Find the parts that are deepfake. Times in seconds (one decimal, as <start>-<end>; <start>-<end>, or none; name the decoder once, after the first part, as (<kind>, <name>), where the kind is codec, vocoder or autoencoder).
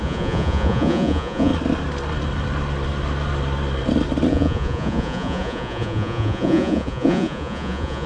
0.0-1.5 (vocoder, Vocos); 4.3-8.1